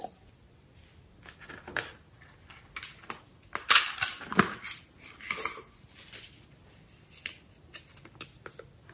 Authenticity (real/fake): real